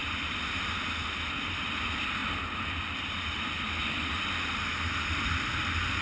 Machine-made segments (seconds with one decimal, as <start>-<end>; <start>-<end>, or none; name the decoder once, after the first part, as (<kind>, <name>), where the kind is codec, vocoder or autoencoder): none